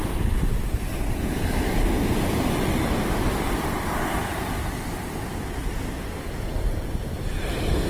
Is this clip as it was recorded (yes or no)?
yes